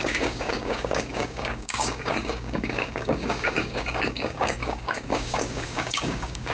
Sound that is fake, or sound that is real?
fake